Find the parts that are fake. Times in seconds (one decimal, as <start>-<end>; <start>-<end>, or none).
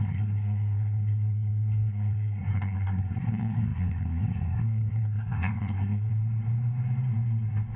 0.0-6.1